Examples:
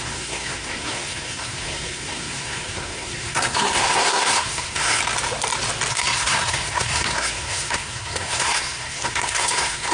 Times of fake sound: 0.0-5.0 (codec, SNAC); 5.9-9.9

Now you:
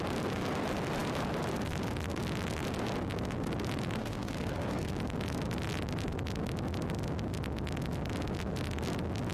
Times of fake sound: 4.0-4.9 (codec, SNAC)

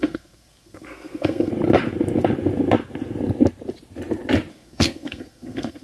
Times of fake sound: 0.0-1.5 (codec, SNAC); 4.5-5.8

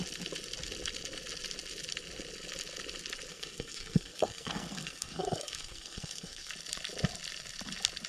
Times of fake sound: 3.3-6.5 (codec, SNAC)

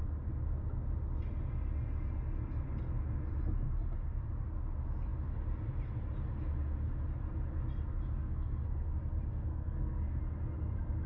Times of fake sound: 8.2-8.9 (codec, SNAC); 9.3-10.2

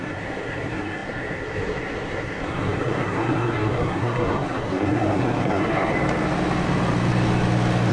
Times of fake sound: 0.0-5.9 (codec, SNAC)

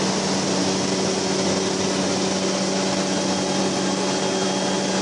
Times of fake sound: none

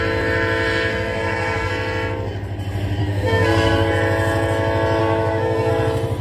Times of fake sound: 0.9-1.7 (codec, SNAC); 3.0-3.9; 5.0-5.7